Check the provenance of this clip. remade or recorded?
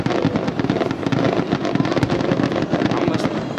recorded